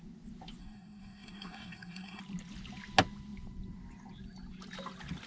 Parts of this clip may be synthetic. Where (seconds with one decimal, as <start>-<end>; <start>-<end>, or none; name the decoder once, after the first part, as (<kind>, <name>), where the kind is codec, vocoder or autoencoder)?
0.6-2.2 (codec, SNAC)